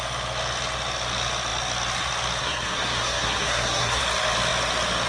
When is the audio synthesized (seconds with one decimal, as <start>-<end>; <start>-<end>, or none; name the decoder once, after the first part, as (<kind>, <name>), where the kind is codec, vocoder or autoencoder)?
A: 2.4-4.0 (codec, SNAC)